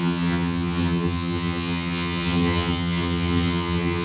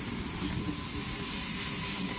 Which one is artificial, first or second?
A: first